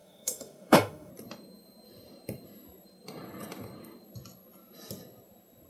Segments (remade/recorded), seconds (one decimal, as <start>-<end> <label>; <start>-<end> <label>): 0.0-1.1 remade; 1.1-5.7 recorded

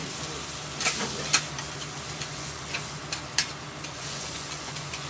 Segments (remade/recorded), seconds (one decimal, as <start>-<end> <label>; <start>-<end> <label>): 0.0-2.2 recorded; 2.2-3.0 remade; 3.0-3.9 recorded; 3.9-5.1 remade

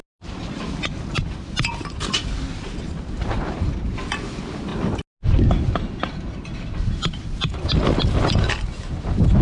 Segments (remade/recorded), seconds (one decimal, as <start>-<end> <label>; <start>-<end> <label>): 0.0-9.4 recorded

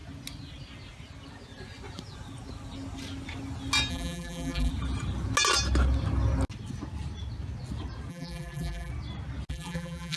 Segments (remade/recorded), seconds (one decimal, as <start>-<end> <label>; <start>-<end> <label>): 0.0-3.9 recorded; 3.9-4.7 remade; 4.7-8.1 recorded; 8.1-8.9 remade; 8.9-9.5 recorded; 9.5-10.2 remade